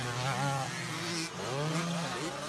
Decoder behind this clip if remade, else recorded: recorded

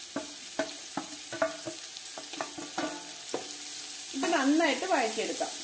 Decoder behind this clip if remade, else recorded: recorded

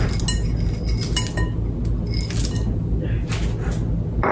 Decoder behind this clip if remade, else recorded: recorded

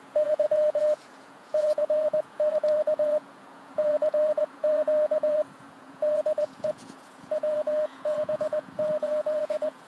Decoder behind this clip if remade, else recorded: remade, vocoder, Vocos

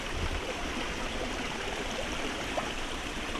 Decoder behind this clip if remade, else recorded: remade, vocoder, BigVGAN v2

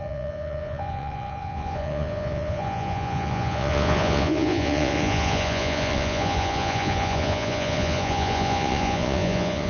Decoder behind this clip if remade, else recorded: remade, vocoder, Vocos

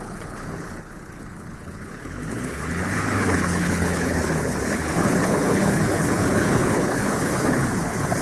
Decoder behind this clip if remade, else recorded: remade, codec, HILCodec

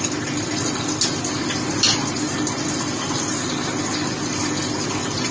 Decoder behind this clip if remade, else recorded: recorded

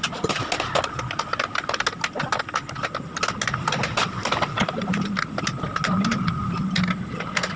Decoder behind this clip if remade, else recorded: recorded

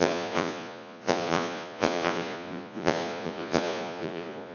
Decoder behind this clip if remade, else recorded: remade, vocoder, Vocos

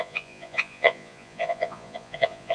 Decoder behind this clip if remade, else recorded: remade, vocoder, Vocos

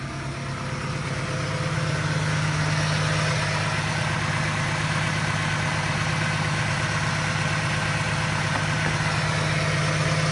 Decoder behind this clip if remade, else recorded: recorded